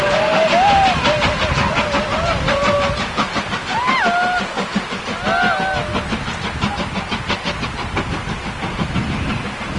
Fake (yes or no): no